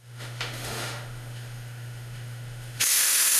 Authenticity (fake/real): fake